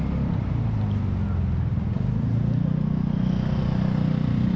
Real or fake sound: real